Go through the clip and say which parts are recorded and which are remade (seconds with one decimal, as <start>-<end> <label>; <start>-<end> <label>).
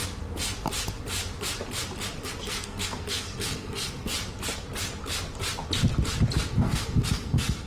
0.0-2.4 recorded; 2.4-4.1 remade; 4.1-6.5 recorded; 6.5-7.7 remade